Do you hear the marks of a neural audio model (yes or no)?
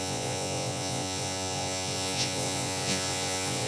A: yes